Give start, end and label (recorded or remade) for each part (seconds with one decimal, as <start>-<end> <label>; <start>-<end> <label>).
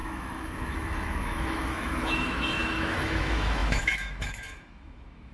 0.0-5.3 remade